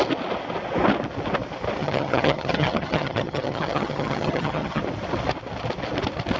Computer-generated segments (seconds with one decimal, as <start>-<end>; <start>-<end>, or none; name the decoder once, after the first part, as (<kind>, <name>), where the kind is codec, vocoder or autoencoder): 1.8-4.8 (vocoder, HiFi-GAN)